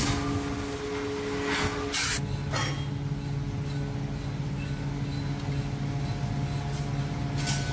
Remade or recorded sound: recorded